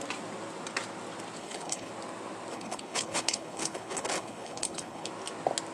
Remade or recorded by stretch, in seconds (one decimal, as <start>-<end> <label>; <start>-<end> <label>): 0.0-1.4 recorded; 1.4-1.9 remade; 1.9-2.5 recorded; 2.5-5.1 remade; 5.1-5.7 recorded